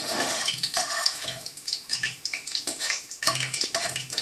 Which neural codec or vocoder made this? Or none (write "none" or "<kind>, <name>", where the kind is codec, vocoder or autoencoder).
autoencoder, DAC-VAE